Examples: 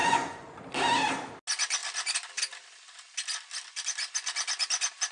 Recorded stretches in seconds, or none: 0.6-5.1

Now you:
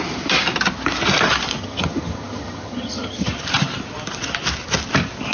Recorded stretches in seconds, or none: 0.0-1.6; 3.3-5.3